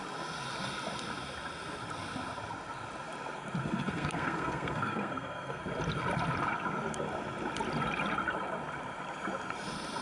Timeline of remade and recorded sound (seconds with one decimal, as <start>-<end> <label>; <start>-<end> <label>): 0.0-3.6 recorded; 3.6-5.6 remade; 5.6-10.0 recorded